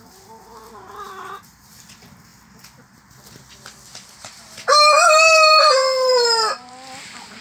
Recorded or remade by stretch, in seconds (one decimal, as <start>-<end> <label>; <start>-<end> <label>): 0.0-7.4 recorded